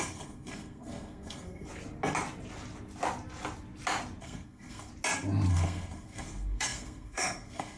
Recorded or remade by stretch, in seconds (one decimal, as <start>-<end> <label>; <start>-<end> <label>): 0.0-1.7 remade; 1.7-4.2 recorded; 4.2-4.9 remade; 4.9-5.5 recorded; 5.5-7.8 remade